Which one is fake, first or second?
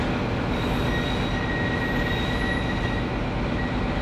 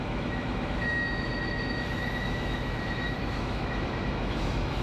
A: second